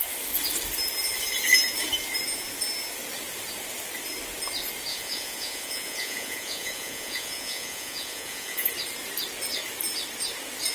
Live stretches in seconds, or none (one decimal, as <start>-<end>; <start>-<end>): 0.0-4.9; 8.7-10.7